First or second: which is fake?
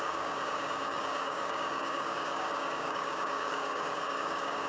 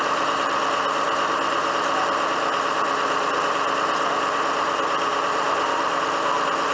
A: first